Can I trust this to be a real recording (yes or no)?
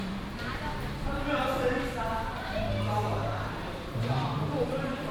no